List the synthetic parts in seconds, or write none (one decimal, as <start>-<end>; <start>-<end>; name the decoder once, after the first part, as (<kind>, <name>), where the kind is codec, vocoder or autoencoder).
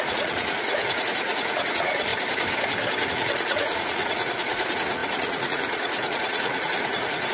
0.0-2.1 (vocoder, Vocos); 3.1-7.3